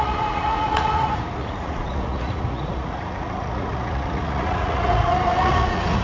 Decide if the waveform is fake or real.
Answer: fake